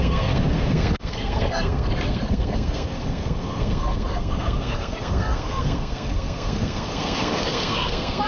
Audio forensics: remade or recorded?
remade